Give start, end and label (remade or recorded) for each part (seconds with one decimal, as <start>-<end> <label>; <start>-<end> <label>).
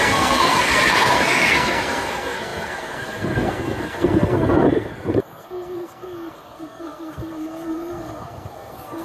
0.0-9.0 remade